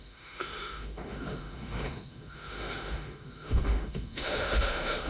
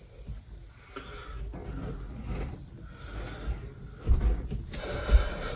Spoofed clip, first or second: first